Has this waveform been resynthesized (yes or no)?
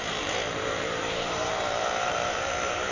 yes